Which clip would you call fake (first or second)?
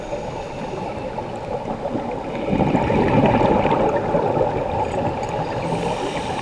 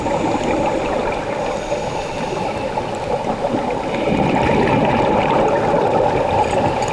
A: second